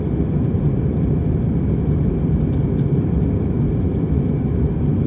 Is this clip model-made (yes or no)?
no